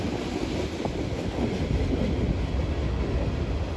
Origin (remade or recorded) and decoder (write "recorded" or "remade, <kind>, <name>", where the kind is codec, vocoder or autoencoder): recorded